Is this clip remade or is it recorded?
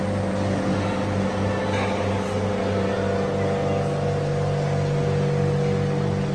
recorded